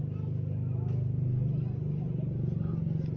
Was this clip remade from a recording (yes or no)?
no